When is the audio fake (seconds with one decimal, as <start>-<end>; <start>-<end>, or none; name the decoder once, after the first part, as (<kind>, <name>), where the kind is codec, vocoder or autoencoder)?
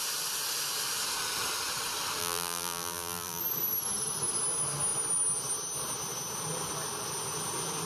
2.2-3.4 (vocoder, BigVGAN v2)